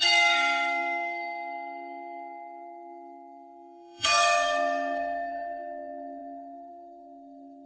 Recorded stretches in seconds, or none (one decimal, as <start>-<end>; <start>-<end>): none